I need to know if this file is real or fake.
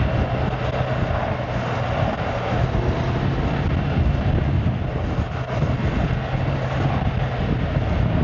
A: real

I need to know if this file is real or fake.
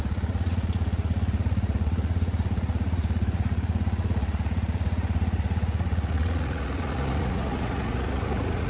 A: fake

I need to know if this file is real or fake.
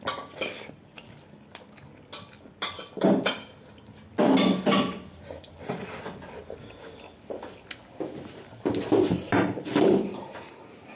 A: real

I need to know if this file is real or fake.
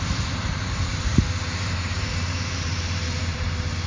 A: fake